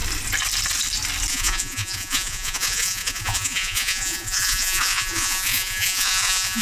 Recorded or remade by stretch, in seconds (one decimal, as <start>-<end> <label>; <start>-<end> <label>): 0.0-1.3 recorded; 1.3-6.6 remade